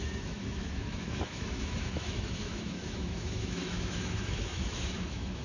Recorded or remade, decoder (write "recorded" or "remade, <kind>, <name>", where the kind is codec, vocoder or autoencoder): remade, autoencoder, DAC-VAE